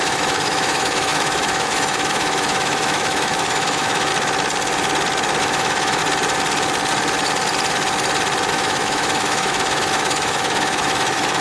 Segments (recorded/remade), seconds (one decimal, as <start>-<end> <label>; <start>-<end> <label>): 0.0-4.1 remade; 4.1-5.4 recorded; 5.4-6.0 remade; 6.0-8.5 recorded; 8.5-11.4 remade